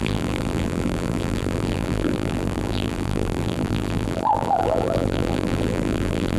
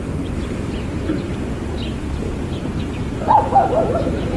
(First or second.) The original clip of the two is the second